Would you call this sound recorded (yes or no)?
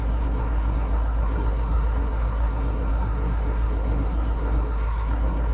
no